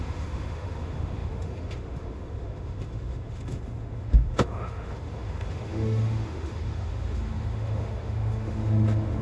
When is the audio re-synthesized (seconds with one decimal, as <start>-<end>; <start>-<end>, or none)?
0.0-9.2